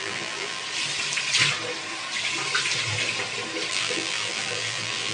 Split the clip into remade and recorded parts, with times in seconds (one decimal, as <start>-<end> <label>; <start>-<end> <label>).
0.0-0.6 remade; 0.6-3.7 recorded; 3.7-5.1 remade